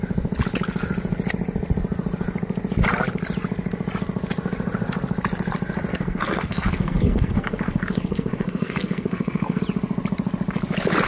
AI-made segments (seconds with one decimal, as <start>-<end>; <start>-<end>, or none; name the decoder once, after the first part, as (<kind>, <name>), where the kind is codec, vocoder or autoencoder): 5.9-9.6 (codec, SNAC)